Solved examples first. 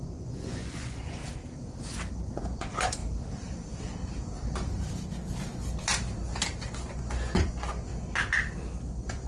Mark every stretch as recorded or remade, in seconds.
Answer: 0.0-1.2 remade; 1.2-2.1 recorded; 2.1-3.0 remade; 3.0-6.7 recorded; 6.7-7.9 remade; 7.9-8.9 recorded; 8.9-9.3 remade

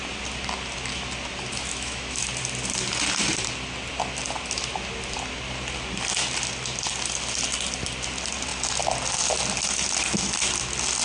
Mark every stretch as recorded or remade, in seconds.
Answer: 0.0-1.7 recorded; 1.7-2.2 remade; 2.2-11.0 recorded